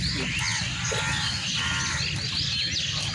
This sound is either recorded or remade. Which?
recorded